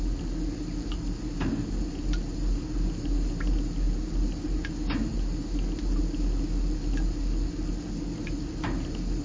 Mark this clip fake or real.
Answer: real